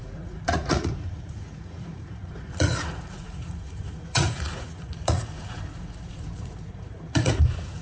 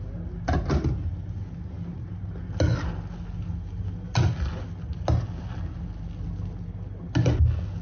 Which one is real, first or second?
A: second